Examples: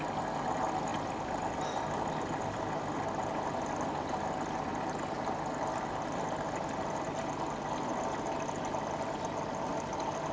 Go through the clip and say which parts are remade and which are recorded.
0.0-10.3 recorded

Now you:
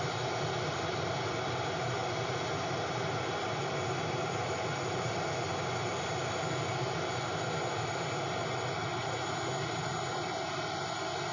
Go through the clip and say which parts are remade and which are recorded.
0.0-11.3 recorded